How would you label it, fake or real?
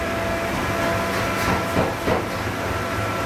real